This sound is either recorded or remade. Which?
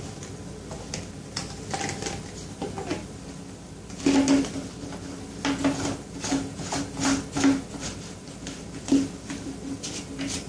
recorded